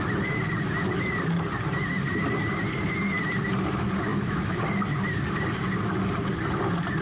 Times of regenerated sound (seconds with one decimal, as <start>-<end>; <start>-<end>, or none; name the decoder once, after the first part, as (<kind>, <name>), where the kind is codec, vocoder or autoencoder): 4.1-4.6 (autoencoder, DAC-VAE)

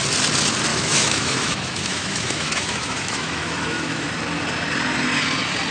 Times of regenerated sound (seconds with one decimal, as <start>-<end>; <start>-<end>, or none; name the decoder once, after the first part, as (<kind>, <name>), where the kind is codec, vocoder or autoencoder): 0.7-4.1 (autoencoder, DAC-VAE)

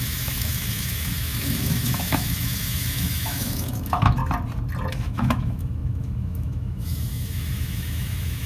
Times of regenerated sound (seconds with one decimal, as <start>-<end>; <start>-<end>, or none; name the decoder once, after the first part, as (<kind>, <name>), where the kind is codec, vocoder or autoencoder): 0.0-4.2 (autoencoder, DAC-VAE); 4.9-8.5

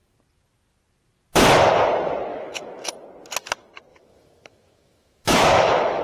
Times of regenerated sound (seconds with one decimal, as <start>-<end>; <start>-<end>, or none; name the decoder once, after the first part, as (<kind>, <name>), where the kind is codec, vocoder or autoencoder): 2.3-2.9 (autoencoder, DAC-VAE); 3.9-6.0

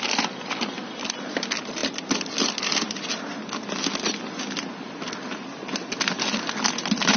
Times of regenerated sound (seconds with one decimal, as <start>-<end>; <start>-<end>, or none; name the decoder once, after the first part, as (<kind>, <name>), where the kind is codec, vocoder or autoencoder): none